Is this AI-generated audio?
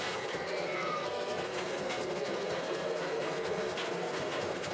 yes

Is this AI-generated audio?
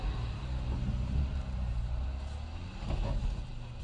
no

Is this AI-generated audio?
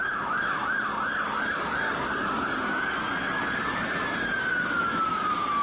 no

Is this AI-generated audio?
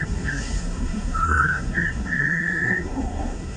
yes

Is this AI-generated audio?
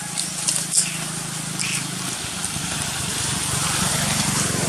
no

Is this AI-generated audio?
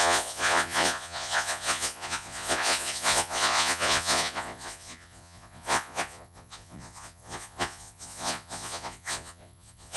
yes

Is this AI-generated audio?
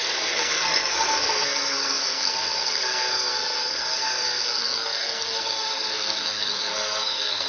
yes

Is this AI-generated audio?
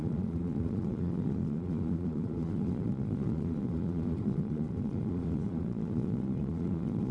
yes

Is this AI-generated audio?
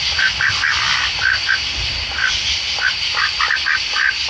no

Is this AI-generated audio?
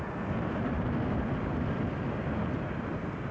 no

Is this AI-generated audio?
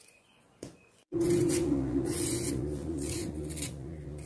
yes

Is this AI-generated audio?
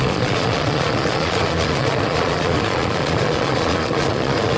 yes